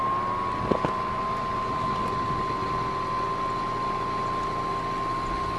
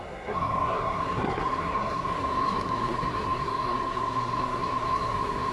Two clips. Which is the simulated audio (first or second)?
second